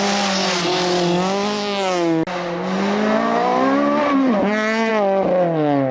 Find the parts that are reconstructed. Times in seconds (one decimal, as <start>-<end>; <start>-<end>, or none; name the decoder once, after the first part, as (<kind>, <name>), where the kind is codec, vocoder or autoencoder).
none